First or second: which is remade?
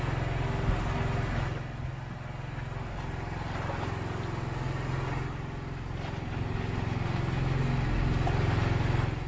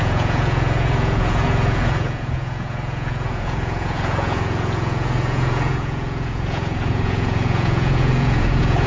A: second